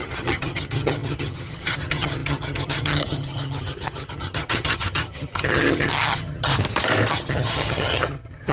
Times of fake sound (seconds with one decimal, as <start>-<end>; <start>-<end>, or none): 0.0-6.5; 7.1-8.5